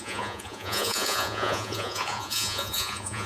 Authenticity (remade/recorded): remade